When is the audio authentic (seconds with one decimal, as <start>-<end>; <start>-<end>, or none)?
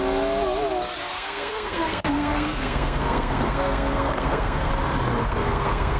0.0-1.1; 4.7-5.2